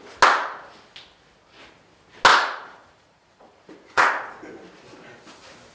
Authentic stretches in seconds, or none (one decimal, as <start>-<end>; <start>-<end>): 0.0-2.3; 4.1-5.7